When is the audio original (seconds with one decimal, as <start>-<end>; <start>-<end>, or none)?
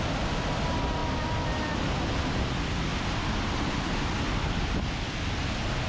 0.0-5.9